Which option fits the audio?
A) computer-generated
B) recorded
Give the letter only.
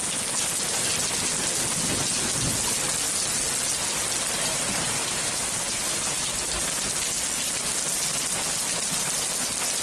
B